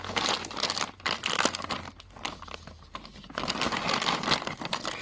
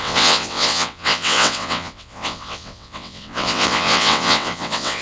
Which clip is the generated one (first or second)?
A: second